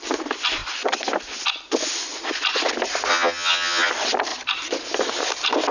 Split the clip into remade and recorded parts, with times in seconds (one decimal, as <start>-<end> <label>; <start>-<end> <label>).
0.0-3.1 recorded; 3.1-3.9 remade; 3.9-5.7 recorded

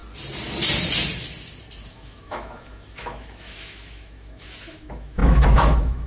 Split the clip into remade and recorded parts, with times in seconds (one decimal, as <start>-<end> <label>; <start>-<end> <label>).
0.0-1.9 recorded; 1.9-6.1 remade

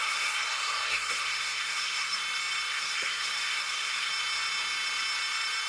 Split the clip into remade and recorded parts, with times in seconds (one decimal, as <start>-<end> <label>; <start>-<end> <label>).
0.0-2.2 remade; 2.2-2.7 recorded; 2.7-4.1 remade; 4.1-5.7 recorded

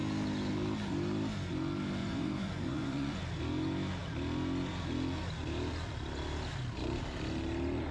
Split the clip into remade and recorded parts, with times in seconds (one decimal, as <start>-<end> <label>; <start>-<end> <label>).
0.0-2.0 recorded; 2.0-3.2 remade; 3.2-7.9 recorded

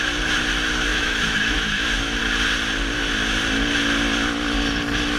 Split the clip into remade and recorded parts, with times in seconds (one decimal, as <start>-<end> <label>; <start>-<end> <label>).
0.0-0.9 recorded; 0.9-2.2 remade; 2.2-5.2 recorded

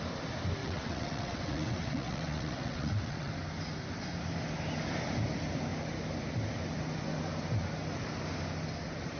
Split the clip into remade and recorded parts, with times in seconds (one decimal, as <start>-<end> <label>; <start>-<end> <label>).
0.0-0.6 recorded; 0.6-3.3 remade; 3.3-9.2 recorded

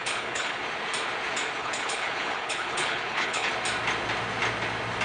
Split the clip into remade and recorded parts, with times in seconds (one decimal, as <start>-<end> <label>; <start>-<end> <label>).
0.0-0.6 remade; 0.6-1.6 recorded; 1.6-3.5 remade; 3.5-5.0 recorded

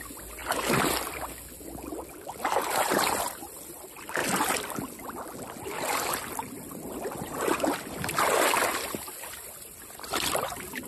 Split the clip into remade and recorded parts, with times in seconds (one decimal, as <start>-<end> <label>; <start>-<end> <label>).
0.0-0.4 remade; 0.4-2.6 recorded; 2.6-4.2 remade; 4.2-7.2 recorded; 7.2-10.9 remade